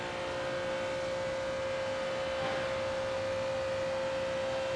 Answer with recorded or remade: recorded